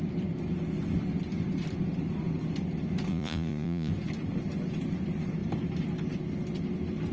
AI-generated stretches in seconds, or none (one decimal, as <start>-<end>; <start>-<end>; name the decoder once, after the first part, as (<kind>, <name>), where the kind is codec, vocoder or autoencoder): 3.1-3.9 (vocoder, Vocos)